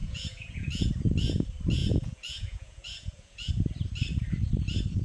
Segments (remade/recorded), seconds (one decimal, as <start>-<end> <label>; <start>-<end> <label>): 0.0-0.9 remade; 0.9-1.8 recorded; 1.8-3.5 remade; 3.5-5.0 recorded